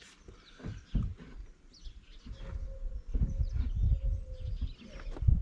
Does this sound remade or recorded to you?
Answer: recorded